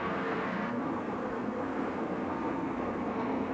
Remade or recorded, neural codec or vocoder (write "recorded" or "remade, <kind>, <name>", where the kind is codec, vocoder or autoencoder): remade, codec, SNAC